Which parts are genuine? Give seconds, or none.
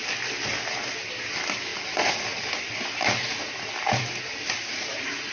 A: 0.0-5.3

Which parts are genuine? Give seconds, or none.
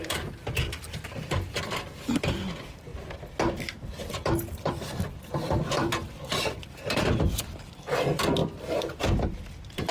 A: 2.9-3.5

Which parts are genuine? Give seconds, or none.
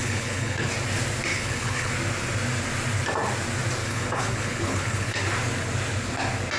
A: 0.7-1.3; 1.9-3.8; 5.2-6.6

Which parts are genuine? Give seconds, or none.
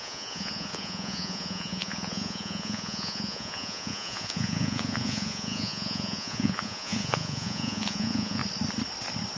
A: 8.4-9.4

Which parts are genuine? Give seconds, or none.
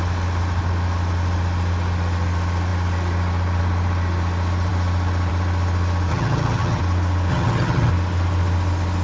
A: 0.0-6.1; 6.8-7.3; 7.9-9.0